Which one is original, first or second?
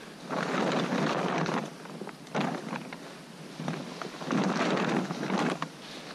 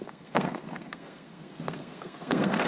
first